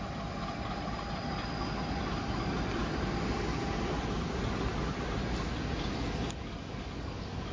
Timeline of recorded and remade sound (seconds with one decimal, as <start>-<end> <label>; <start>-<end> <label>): 0.0-7.5 recorded